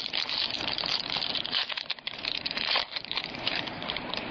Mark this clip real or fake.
fake